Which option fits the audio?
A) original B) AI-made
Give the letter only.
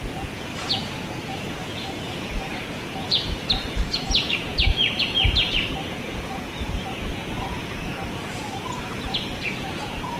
B